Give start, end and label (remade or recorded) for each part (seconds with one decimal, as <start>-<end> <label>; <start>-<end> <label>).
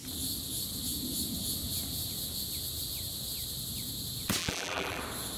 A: 0.0-4.4 recorded; 4.4-5.0 remade; 5.0-5.4 recorded